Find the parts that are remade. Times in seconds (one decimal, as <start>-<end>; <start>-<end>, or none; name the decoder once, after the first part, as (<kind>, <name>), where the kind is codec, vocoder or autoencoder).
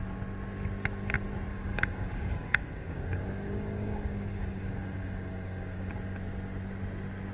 1.5-5.9 (codec, DAC)